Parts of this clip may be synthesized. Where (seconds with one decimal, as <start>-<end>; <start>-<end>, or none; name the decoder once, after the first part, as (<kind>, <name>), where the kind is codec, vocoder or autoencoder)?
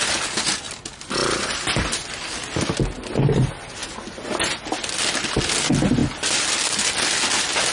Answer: 1.2-2.8 (vocoder, BigVGAN v2)